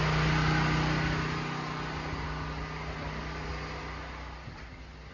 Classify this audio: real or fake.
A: real